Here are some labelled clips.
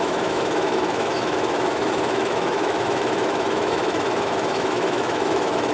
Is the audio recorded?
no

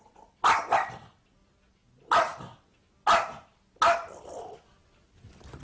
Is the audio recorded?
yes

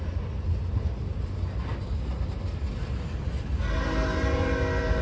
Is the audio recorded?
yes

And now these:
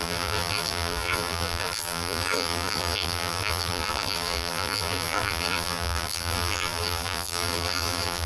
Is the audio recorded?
no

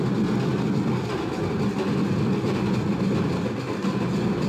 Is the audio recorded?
yes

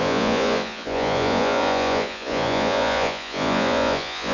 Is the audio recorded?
no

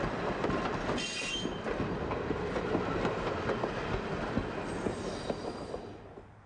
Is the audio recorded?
yes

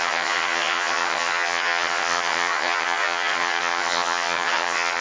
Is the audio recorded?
no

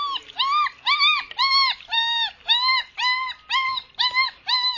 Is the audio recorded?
yes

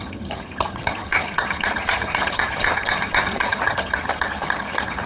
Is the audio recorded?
no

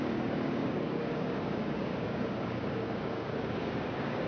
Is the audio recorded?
no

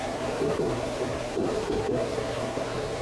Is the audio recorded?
no